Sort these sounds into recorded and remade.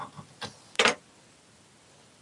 recorded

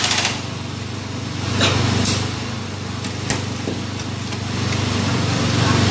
recorded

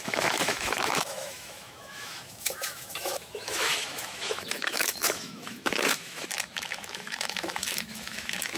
remade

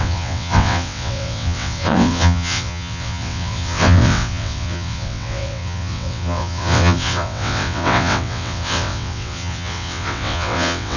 remade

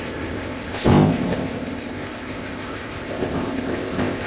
remade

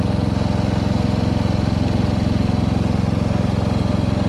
recorded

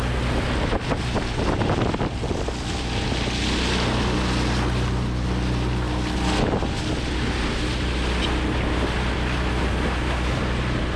recorded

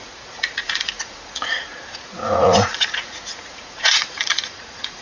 remade